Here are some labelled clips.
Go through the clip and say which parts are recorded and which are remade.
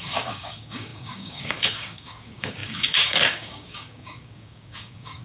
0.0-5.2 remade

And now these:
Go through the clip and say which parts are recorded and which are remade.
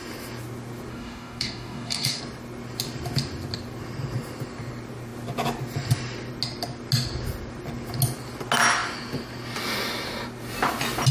0.0-0.9 recorded; 0.9-2.2 remade; 2.2-11.1 recorded